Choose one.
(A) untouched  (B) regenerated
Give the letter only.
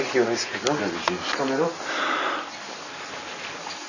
A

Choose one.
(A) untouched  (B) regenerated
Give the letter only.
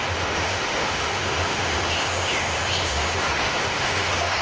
B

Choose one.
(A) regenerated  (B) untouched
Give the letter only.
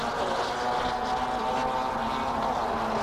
B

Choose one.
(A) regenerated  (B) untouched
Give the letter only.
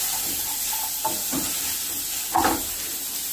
B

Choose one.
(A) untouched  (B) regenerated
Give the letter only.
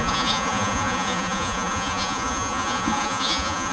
B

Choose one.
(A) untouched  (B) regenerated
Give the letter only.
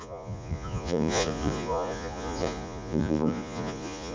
B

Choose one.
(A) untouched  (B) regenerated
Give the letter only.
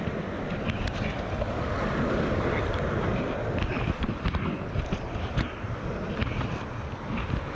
A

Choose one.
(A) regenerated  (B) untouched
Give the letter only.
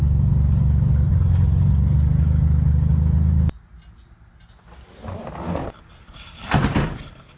B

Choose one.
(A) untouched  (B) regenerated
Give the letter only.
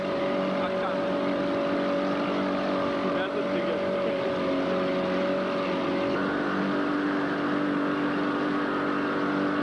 A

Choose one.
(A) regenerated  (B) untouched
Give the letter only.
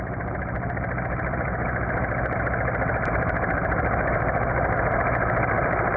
A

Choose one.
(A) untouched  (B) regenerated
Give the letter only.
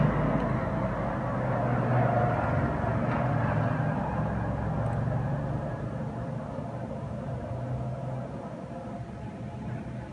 A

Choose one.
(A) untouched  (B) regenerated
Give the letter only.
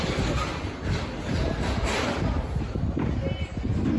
A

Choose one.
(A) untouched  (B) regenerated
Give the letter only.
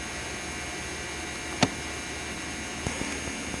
A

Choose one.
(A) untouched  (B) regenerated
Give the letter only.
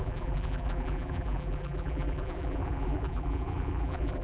B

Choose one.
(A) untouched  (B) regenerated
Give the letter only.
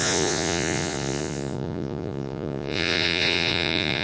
B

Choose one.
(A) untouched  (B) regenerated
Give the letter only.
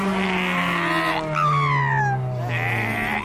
A